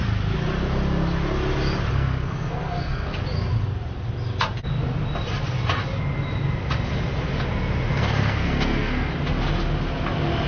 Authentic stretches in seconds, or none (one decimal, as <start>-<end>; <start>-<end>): 0.0-1.9; 3.2-7.9; 9.1-10.5

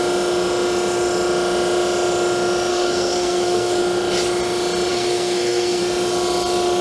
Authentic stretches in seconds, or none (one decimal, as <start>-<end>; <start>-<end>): 0.0-2.7; 3.8-4.9; 5.8-6.8

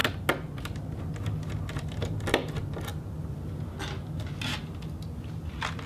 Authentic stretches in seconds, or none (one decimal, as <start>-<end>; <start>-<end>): 0.0-5.9

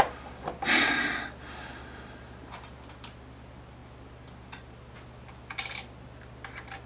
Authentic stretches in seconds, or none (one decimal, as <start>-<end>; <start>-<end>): 0.0-6.9

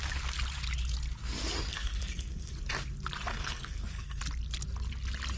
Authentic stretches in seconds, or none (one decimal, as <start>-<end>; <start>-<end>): 0.0-1.7; 2.5-3.3; 4.2-5.4

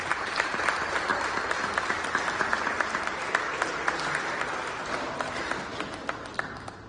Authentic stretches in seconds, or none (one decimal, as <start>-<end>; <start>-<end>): 0.0-6.9

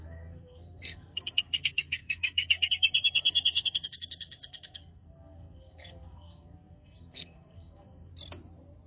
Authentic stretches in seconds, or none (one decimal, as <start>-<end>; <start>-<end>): 8.1-8.9

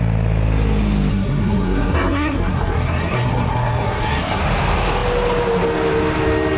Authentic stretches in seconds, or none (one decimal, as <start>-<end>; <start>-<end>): 0.0-1.1; 4.4-6.6